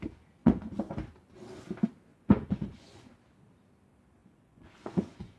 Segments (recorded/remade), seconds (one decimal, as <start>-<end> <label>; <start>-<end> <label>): 0.0-0.4 recorded; 0.4-1.1 remade; 1.1-2.1 recorded; 2.1-3.1 remade; 3.1-4.2 recorded; 4.2-5.4 remade